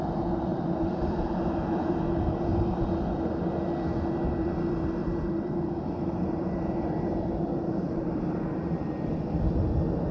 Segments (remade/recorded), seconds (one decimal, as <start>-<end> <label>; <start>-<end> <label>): 0.0-0.5 recorded; 0.5-1.9 remade; 1.9-2.5 recorded; 2.5-3.2 remade; 3.2-5.0 recorded; 5.0-9.2 remade; 9.2-10.1 recorded

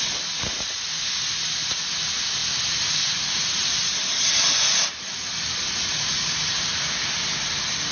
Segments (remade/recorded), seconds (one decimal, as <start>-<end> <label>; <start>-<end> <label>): 0.0-7.9 recorded

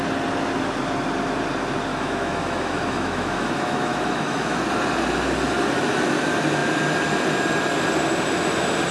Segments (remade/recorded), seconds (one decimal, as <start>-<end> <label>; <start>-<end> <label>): 0.0-1.9 recorded; 1.9-4.6 remade; 4.6-8.9 recorded

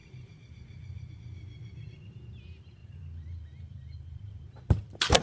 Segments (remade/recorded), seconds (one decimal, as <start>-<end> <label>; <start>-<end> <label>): 0.0-1.1 remade; 1.1-2.8 recorded; 2.8-4.2 remade; 4.2-5.2 recorded

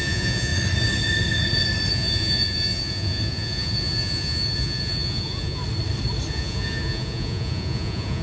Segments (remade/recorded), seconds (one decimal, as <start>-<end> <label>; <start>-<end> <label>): 0.0-0.5 remade; 0.5-1.9 recorded; 1.9-5.6 remade; 5.6-6.3 recorded; 6.3-8.2 remade

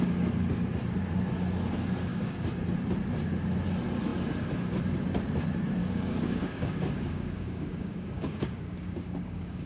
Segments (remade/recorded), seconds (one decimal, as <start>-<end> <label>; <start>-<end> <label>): 0.0-2.1 recorded; 2.1-2.6 remade; 2.6-5.8 recorded; 5.8-9.7 remade

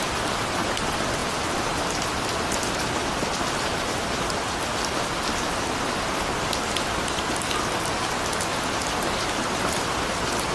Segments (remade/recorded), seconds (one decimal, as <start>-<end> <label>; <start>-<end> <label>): 0.0-10.5 recorded

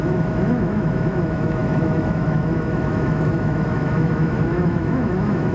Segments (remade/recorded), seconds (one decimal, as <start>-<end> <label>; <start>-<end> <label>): 0.0-5.5 remade